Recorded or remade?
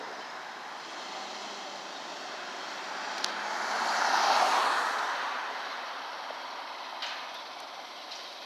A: recorded